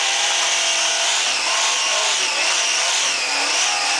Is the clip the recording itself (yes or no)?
yes